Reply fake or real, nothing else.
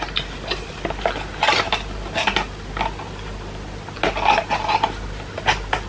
real